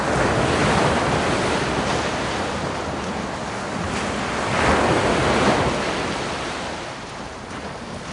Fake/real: real